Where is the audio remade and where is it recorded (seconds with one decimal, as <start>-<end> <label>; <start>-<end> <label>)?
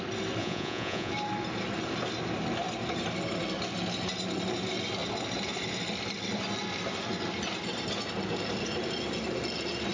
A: 0.0-0.4 recorded; 0.4-1.1 remade; 1.1-9.9 recorded